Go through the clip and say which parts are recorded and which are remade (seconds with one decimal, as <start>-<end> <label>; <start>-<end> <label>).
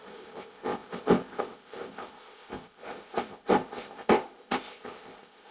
0.0-5.5 remade